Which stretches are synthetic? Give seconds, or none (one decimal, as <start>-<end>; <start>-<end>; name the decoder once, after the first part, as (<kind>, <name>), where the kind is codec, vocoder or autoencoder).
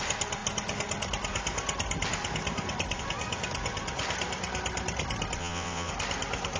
5.4-5.9 (vocoder, WaveNeXt)